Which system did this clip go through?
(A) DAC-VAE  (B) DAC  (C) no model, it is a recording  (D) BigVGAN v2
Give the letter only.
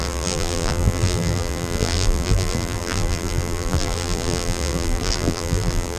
D